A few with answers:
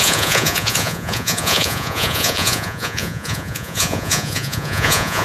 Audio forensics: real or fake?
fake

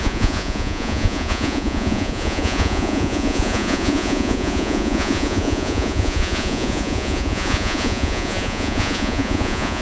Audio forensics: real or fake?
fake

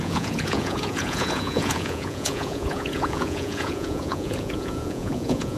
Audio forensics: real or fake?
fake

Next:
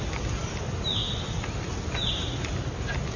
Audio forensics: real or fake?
real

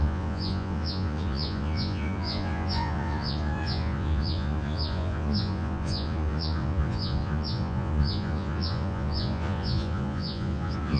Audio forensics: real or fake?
fake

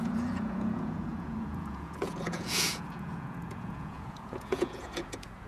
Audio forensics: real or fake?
fake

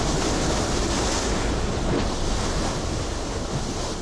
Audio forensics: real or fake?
real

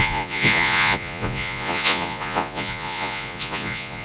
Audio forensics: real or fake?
fake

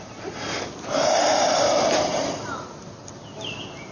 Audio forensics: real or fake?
real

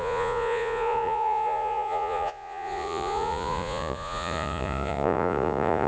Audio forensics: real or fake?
fake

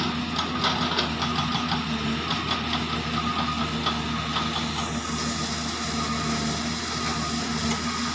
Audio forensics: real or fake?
real